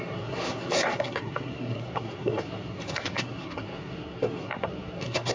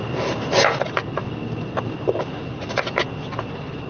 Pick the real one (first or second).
second